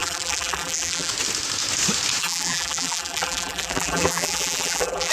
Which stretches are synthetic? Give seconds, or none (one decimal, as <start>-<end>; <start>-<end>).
0.0-1.1; 2.2-5.1